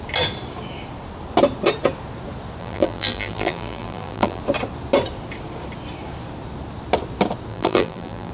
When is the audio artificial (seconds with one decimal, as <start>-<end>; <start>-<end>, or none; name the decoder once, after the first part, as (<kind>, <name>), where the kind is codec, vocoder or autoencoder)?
2.6-4.4 (vocoder, BigVGAN v2); 7.5-8.3